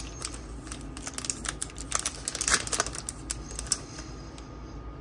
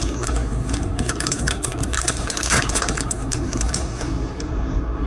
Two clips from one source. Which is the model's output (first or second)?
second